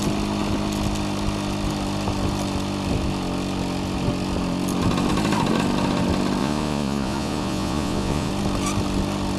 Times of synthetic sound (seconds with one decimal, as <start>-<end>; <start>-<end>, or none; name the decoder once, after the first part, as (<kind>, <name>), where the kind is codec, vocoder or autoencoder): 6.4-8.3 (vocoder, Vocos)